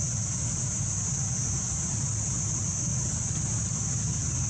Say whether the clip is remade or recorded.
recorded